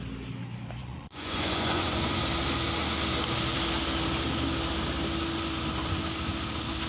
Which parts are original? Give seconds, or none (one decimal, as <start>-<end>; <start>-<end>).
0.0-0.8; 2.2-6.9